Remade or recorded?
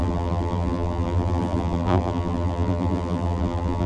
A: remade